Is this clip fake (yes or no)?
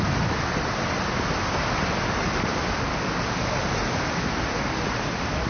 no